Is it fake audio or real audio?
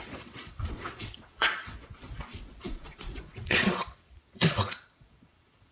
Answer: fake